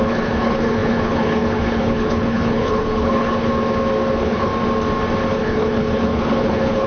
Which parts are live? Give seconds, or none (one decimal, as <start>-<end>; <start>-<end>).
3.5-4.1; 4.5-5.3